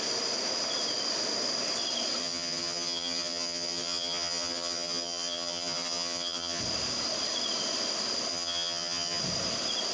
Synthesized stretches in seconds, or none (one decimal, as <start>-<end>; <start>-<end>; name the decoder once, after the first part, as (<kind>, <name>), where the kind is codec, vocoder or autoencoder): 2.2-6.6 (vocoder, HiFi-GAN); 8.3-9.2

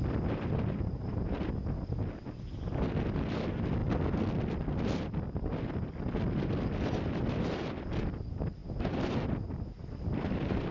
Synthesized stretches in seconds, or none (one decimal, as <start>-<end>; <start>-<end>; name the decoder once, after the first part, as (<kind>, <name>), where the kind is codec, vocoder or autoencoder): none

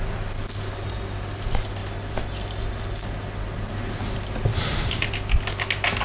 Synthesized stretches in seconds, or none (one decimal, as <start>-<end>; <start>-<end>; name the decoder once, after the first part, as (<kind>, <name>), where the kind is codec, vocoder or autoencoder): none

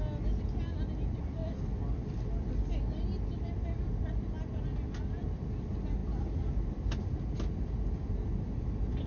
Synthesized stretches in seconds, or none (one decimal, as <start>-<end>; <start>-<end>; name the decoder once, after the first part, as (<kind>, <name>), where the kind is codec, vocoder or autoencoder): none

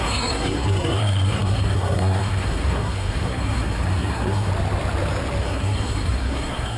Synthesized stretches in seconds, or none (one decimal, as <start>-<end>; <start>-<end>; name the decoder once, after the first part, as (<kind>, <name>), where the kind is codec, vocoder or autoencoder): 0.0-4.5 (codec, SNAC); 5.4-6.8

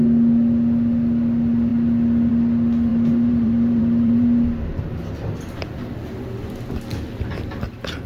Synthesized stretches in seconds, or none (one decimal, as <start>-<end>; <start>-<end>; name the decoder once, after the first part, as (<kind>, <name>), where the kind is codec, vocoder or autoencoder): 2.9-4.8 (vocoder, BigVGAN v2)

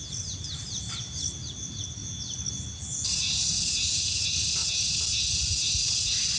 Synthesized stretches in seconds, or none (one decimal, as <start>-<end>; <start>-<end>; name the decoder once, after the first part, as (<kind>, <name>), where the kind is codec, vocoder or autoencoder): none

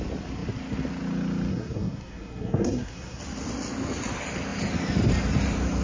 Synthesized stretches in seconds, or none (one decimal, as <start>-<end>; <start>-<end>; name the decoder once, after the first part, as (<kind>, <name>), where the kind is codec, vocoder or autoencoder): 1.5-3.2 (codec, SNAC)